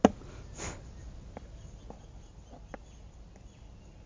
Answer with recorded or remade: recorded